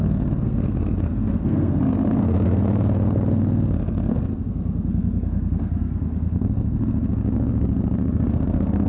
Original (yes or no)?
no